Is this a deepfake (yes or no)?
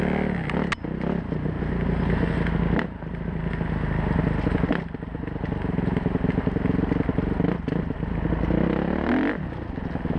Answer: no